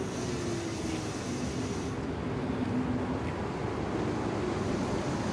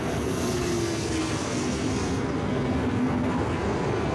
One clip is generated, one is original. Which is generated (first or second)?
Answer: second